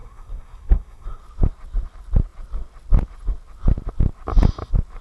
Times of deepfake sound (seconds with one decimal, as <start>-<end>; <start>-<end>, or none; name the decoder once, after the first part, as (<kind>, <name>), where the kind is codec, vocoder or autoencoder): 0.0-1.2 (codec, SNAC)